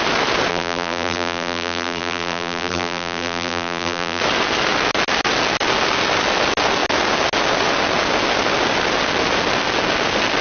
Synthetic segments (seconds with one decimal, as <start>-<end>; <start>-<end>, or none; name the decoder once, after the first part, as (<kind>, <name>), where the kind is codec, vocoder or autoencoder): 0.5-4.2 (vocoder, BigVGAN v2)